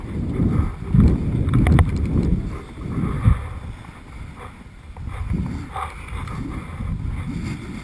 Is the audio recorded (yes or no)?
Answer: yes